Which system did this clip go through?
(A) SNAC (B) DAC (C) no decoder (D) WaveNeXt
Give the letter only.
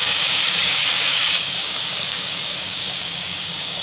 B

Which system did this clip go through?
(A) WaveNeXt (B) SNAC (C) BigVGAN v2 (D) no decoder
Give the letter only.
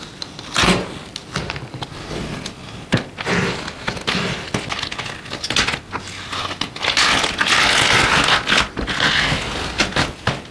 D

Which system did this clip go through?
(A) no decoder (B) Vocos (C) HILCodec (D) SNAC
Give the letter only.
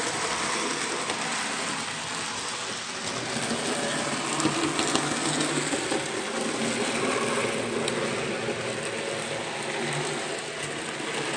A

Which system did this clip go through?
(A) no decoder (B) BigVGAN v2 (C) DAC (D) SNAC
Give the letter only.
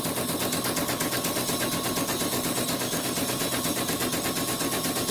A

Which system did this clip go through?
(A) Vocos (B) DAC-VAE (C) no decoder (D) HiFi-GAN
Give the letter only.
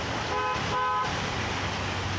C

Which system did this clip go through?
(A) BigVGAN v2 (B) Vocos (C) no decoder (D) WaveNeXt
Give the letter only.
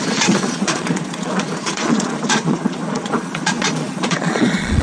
B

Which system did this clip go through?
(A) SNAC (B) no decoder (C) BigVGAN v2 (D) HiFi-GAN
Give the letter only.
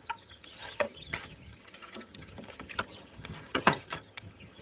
D